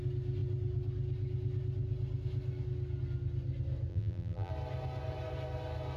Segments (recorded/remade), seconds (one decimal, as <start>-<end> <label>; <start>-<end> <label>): 0.0-3.9 recorded; 3.9-4.5 remade; 4.5-6.0 recorded